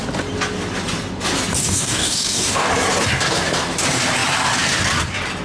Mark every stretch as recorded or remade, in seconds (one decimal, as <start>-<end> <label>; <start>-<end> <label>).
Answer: 0.0-1.6 recorded; 1.6-2.7 remade; 2.7-5.4 recorded